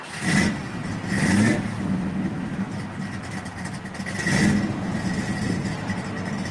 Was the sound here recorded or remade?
recorded